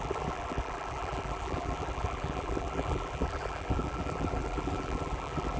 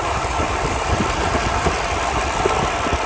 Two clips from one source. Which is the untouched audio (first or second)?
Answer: second